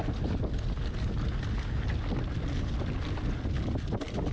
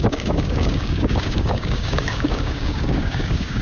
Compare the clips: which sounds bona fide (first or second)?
first